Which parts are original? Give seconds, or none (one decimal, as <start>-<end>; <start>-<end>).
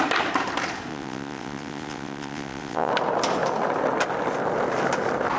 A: 0.0-0.9; 2.9-5.4